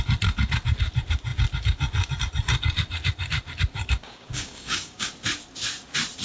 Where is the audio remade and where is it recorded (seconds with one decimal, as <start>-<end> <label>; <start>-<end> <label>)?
0.0-4.0 recorded; 4.0-5.1 remade; 5.1-6.2 recorded